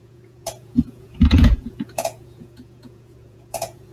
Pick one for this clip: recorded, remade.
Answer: remade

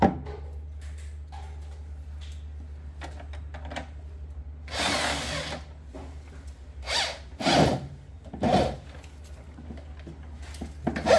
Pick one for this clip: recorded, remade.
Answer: recorded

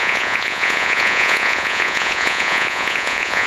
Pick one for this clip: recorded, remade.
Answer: remade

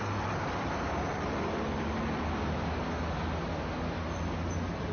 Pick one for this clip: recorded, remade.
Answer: recorded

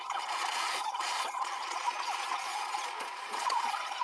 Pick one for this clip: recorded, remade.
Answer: remade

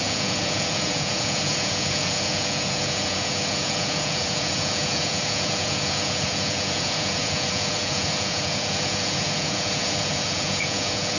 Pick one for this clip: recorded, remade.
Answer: remade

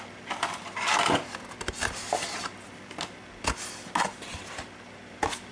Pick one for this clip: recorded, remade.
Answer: recorded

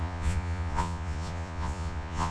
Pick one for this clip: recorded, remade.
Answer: remade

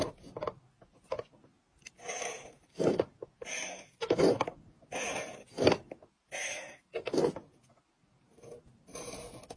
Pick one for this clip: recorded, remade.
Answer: recorded